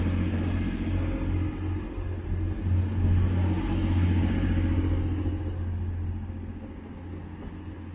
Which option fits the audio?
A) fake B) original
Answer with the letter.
B